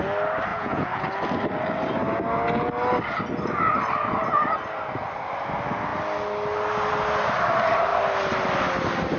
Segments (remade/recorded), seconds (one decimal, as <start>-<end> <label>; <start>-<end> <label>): 0.0-0.5 recorded; 0.5-1.0 remade; 1.0-9.2 recorded

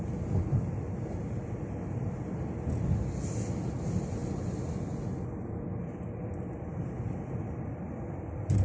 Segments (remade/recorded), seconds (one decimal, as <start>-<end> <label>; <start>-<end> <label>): 0.0-8.6 recorded